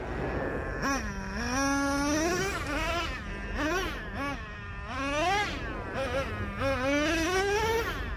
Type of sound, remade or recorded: recorded